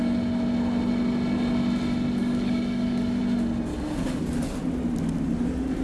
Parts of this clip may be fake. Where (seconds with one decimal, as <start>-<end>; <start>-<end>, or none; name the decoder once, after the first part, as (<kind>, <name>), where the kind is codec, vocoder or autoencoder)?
2.2-3.2 (codec, DAC); 3.7-4.2